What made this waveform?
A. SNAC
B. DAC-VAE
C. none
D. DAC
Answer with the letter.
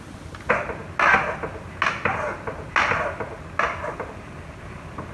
C